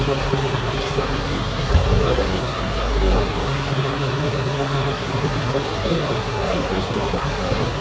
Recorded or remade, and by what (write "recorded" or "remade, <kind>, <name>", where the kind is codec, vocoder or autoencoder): remade, codec, SNAC